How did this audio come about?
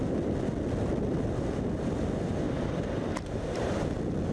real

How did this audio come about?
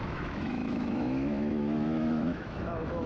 fake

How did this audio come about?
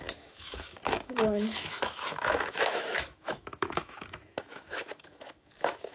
fake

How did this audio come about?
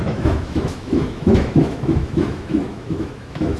fake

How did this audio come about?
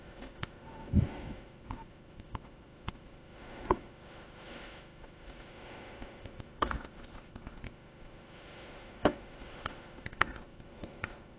fake